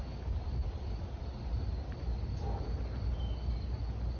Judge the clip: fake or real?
real